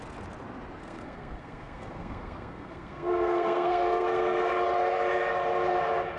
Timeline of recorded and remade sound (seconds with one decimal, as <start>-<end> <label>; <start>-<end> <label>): 0.0-0.8 recorded; 0.8-4.5 remade; 4.5-6.2 recorded